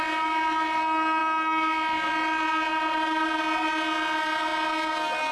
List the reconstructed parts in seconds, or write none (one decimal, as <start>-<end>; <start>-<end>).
2.7-3.4